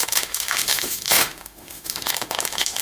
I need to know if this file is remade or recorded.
remade